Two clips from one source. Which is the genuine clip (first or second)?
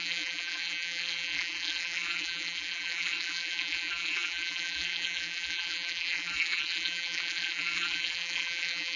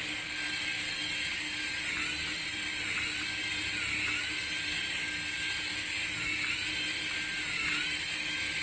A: second